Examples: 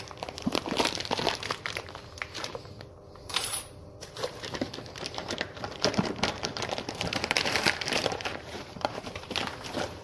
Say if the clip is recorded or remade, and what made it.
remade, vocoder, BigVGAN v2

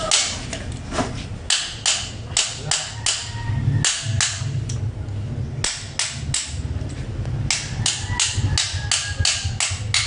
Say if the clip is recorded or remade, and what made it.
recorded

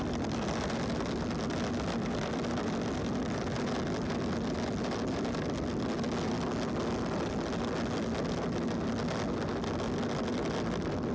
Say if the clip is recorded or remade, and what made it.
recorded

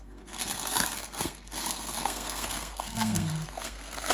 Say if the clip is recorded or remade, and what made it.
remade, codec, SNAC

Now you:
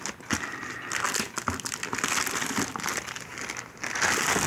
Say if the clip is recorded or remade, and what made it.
recorded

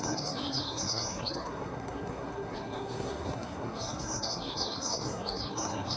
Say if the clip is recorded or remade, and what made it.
remade, codec, SNAC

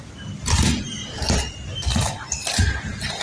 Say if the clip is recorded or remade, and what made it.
recorded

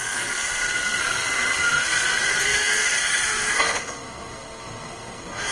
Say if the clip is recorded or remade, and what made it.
remade, codec, SNAC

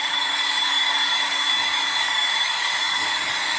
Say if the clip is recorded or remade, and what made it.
remade, codec, DAC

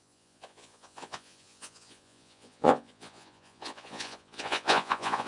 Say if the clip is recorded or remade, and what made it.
remade, vocoder, Vocos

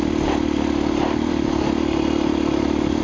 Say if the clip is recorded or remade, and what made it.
recorded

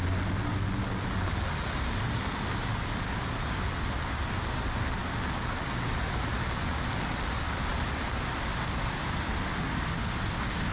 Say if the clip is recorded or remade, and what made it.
recorded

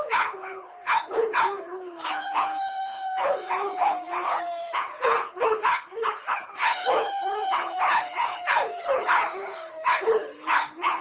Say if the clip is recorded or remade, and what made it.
remade, codec, HILCodec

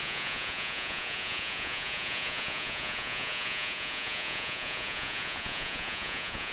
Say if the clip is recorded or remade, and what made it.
remade, vocoder, Vocos